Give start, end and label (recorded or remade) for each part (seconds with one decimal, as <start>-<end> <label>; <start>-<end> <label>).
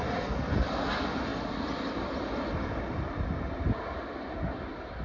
0.0-5.0 recorded